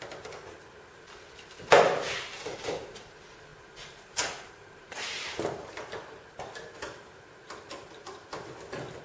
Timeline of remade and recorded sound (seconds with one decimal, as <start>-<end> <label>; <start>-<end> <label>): 0.0-3.5 recorded; 3.5-5.7 remade; 5.7-9.0 recorded